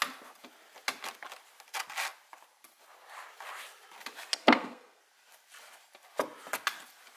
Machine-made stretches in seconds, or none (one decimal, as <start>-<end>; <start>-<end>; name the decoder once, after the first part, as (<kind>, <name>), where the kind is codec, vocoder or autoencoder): 4.4-5.0 (codec, SNAC)